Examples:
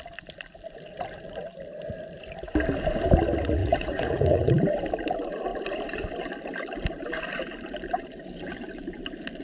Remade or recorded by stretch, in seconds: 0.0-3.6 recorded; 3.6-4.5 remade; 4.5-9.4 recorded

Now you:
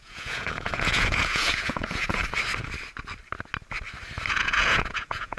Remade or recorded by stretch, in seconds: 0.0-2.2 remade; 2.2-4.3 recorded; 4.3-5.4 remade

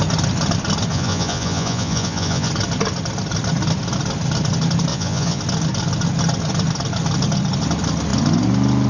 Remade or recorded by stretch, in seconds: 0.0-0.9 recorded; 0.9-2.5 remade; 2.5-4.9 recorded; 4.9-5.4 remade; 5.4-8.9 recorded

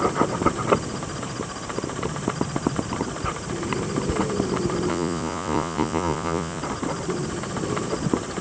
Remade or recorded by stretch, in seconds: 0.0-4.9 recorded; 4.9-6.6 remade; 6.6-8.4 recorded